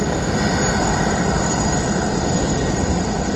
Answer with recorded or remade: recorded